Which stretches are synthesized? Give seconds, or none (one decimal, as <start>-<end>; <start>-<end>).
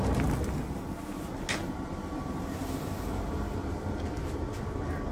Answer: none